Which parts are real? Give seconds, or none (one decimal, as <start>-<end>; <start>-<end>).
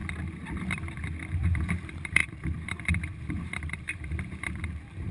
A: 0.0-1.3